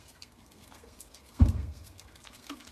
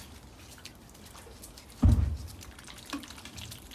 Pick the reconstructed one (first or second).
first